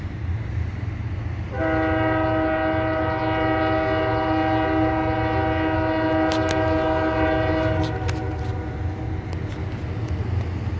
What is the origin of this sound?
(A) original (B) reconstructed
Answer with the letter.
A